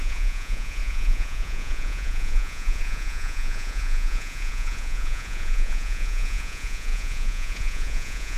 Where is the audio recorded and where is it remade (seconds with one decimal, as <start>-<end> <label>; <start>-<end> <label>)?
0.0-8.4 remade